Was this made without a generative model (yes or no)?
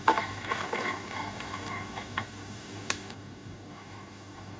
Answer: no